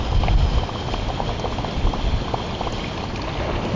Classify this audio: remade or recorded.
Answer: recorded